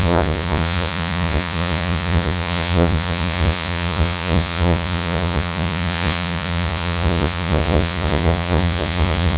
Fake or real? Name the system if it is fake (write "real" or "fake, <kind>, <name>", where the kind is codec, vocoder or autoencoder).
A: fake, vocoder, Vocos